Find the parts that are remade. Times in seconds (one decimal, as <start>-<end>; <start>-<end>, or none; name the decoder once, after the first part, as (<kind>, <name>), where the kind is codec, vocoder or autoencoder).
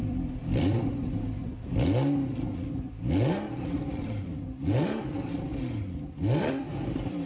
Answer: 0.0-1.4 (vocoder, BigVGAN v2); 3.9-7.2